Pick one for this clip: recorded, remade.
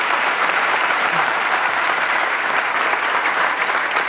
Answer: remade